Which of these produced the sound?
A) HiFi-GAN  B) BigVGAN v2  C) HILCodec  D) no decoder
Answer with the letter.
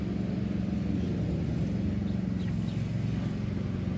D